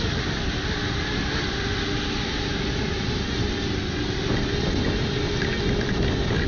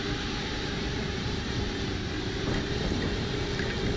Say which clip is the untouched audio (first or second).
first